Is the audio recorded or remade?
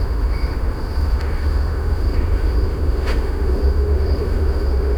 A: remade